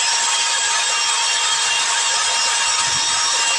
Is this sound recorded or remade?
recorded